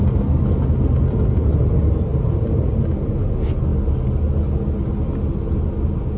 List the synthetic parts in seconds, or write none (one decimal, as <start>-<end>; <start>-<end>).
2.1-2.8